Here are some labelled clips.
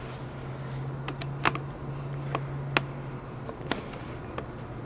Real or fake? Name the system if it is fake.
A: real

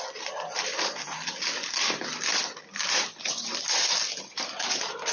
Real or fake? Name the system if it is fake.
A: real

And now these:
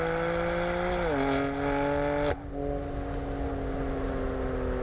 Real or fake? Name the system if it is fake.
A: real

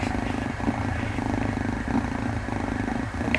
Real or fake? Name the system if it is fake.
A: real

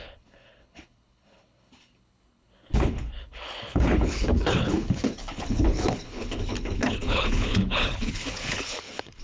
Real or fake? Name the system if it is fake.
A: fake, codec, HILCodec